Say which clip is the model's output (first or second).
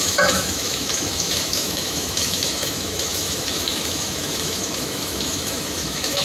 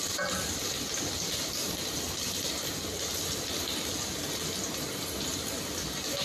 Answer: first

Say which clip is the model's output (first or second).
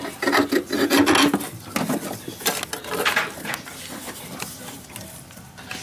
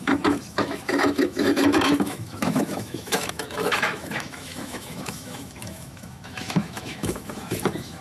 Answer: second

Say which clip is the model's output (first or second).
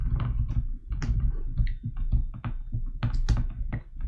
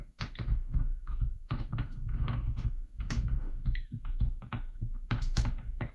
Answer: second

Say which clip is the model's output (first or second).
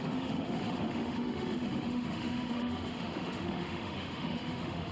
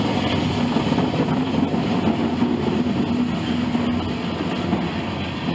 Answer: first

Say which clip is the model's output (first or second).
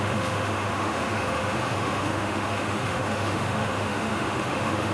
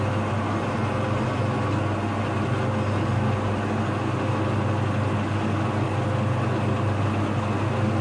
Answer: first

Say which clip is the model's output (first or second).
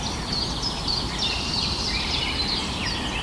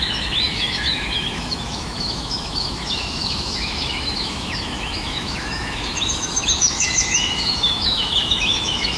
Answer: second